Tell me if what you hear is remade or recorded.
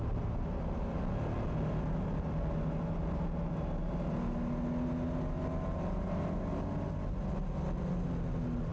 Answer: recorded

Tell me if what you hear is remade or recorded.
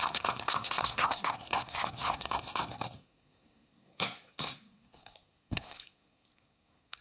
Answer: remade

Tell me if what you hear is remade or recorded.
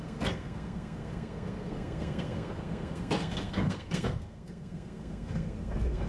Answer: remade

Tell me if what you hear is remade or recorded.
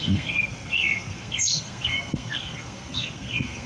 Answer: remade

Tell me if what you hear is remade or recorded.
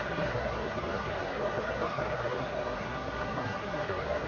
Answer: remade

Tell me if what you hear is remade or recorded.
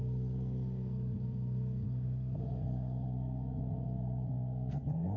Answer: remade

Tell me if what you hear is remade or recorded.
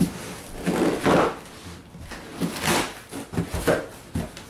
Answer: recorded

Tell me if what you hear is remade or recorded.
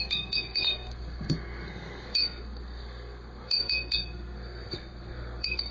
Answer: remade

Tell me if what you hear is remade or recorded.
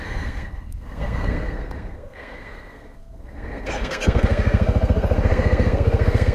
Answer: remade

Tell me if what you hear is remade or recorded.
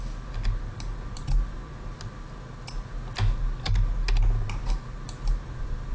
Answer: recorded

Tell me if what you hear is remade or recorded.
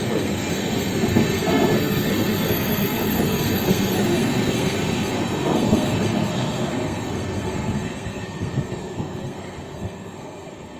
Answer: remade